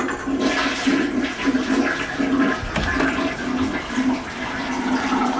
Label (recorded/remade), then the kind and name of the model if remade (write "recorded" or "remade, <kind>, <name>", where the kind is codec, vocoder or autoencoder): recorded